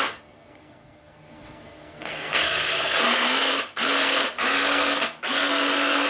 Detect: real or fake fake